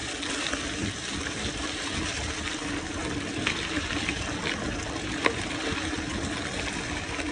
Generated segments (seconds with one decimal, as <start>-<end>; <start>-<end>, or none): none

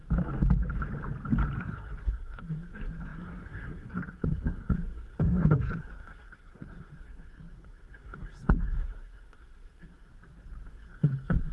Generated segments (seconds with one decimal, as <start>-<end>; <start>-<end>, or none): 1.6-10.1; 10.7-11.5

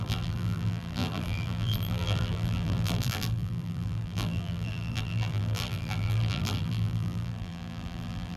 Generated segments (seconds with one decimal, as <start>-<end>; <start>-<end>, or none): 0.0-8.4

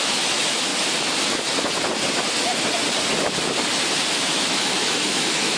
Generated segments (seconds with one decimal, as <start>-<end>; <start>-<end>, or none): 0.0-0.7; 4.1-5.6

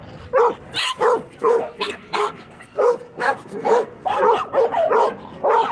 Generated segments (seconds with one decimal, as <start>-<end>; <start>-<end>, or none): 1.4-4.3

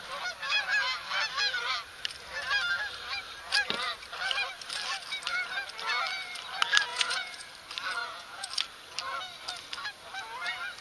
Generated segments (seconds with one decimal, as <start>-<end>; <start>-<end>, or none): 6.9-7.5; 8.0-8.5

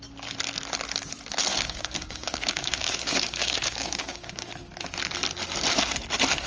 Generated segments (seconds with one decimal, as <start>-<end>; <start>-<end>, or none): 1.5-4.5